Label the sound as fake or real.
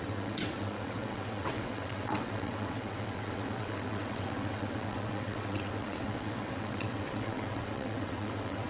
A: fake